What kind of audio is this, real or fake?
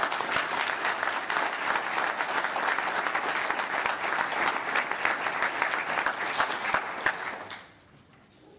real